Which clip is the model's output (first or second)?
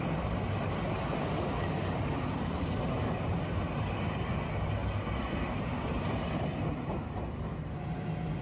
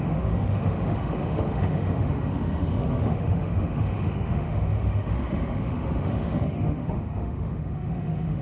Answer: second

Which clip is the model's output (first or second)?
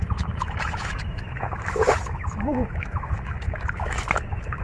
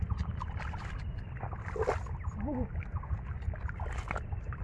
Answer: first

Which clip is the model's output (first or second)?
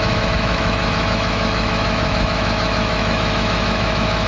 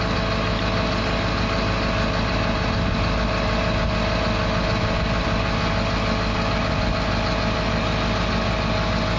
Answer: first